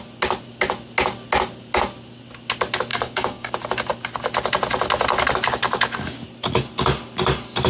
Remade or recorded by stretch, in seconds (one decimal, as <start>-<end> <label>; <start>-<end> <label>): 0.0-2.9 recorded; 2.9-3.5 remade; 3.5-7.7 recorded